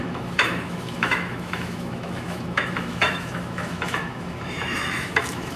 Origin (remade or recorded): remade